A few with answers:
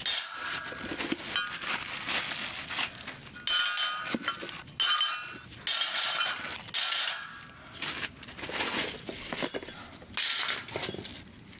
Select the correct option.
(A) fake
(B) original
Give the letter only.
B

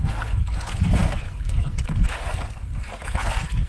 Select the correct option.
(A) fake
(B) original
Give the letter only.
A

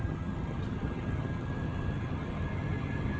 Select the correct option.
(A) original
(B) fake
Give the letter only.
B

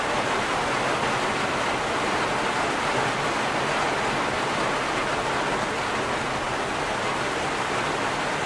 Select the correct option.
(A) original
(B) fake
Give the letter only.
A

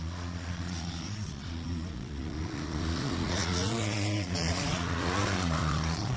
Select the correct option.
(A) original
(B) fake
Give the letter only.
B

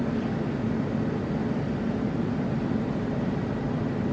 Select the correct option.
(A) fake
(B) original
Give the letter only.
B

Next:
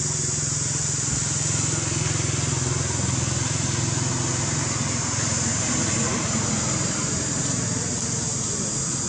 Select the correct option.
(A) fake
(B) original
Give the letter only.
B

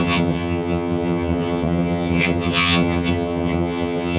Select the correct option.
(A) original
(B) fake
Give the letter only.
B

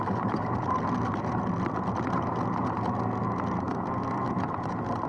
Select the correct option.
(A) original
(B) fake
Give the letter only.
A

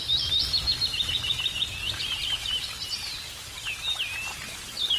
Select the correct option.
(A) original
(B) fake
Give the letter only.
A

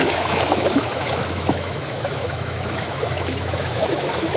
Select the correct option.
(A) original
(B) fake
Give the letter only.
B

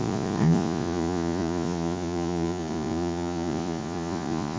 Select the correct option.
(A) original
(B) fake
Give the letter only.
B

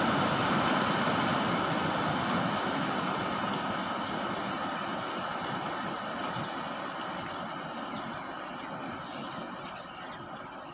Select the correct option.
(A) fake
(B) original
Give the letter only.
B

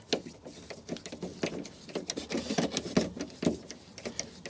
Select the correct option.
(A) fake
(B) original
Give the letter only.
B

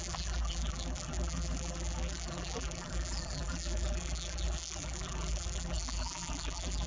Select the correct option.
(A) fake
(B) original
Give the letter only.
A